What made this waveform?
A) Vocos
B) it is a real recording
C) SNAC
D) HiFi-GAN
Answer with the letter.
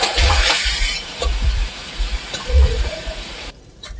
A